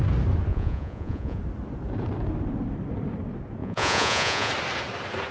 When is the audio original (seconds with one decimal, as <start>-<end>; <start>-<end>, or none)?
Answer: 0.0-0.5; 1.4-3.6; 4.5-5.3